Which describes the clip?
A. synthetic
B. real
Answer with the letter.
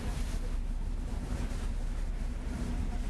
B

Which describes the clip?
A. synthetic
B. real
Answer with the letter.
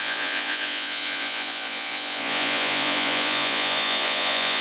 A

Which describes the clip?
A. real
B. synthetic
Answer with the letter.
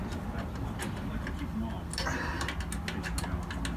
A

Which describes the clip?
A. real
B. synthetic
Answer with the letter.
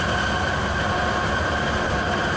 A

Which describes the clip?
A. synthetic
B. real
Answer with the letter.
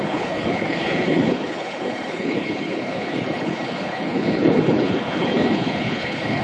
A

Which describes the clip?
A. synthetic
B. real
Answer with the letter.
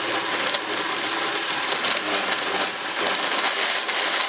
B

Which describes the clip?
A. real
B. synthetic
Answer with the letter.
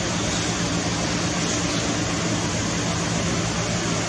A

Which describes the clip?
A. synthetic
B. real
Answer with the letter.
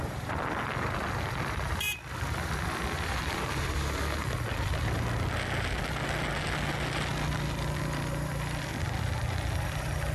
B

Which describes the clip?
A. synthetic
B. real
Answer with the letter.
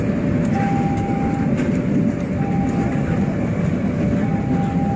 B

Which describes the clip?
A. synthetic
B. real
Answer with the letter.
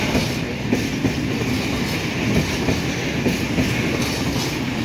B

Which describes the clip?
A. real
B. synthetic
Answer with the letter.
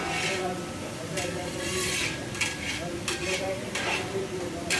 B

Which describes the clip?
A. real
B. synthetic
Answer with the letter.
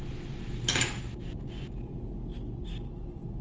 A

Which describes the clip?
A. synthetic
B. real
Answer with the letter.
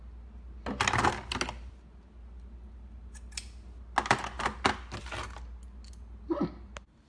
B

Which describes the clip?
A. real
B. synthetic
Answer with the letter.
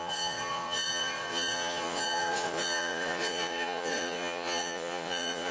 B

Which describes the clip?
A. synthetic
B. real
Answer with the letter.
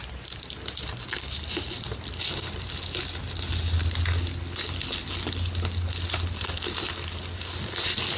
B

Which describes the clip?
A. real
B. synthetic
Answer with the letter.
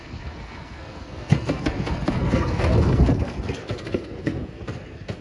B